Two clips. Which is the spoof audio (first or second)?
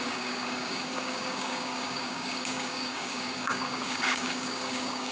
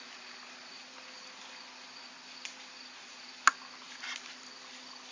first